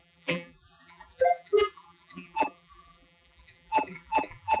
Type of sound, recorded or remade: remade